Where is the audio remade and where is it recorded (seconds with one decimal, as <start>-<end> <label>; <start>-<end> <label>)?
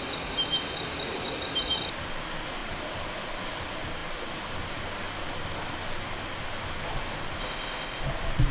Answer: 0.0-7.4 recorded; 7.4-8.0 remade; 8.0-8.5 recorded